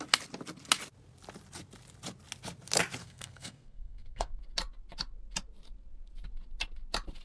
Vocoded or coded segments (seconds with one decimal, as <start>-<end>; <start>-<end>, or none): 3.0-4.4